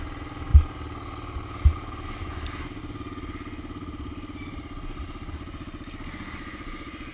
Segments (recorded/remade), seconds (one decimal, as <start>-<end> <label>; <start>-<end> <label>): 0.0-7.1 recorded